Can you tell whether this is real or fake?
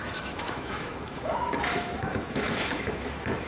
fake